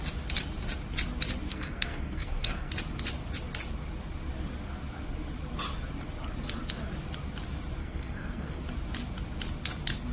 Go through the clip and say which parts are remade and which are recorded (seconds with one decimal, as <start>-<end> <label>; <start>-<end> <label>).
0.0-1.5 recorded; 1.5-2.7 remade; 2.7-7.8 recorded; 7.8-8.6 remade; 8.6-10.1 recorded